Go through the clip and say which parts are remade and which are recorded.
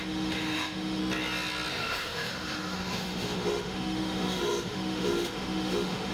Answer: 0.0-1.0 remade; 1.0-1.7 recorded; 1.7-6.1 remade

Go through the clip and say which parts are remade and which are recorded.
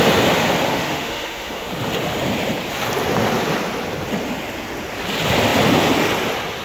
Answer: 0.0-0.7 recorded; 0.7-1.7 remade; 1.7-6.6 recorded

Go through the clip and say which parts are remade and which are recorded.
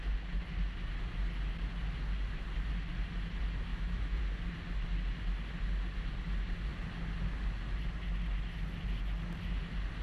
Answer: 0.0-3.7 recorded; 3.7-4.2 remade; 4.2-10.0 recorded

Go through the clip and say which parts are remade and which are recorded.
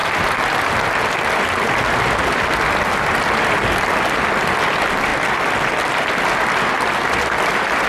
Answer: 0.0-7.9 recorded